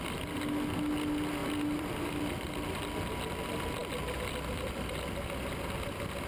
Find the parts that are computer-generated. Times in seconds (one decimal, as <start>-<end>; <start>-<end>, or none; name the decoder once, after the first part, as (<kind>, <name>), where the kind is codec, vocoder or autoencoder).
1.4-2.6 (vocoder, BigVGAN v2)